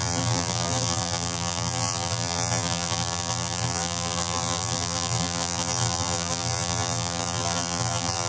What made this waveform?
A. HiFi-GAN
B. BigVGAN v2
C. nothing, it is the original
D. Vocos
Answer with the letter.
B